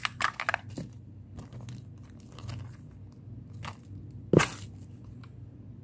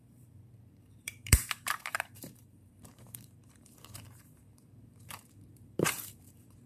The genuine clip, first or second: first